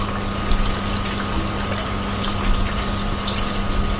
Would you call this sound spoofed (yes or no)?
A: no